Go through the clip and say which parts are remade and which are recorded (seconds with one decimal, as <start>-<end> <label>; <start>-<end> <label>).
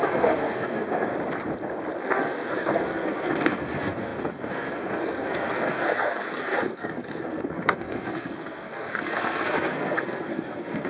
0.0-1.1 remade; 1.1-2.0 recorded; 2.0-10.9 remade